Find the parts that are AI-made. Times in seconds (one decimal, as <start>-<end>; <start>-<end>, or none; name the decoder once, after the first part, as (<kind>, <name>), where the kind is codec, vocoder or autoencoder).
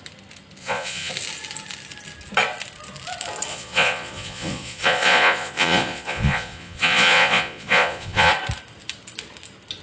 0.6-1.1 (vocoder, Vocos); 3.5-8.3